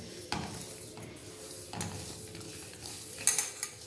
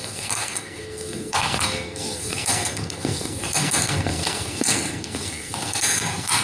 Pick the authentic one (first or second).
first